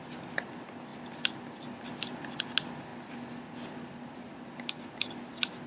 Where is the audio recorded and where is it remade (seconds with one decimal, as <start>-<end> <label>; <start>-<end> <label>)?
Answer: 0.0-5.7 recorded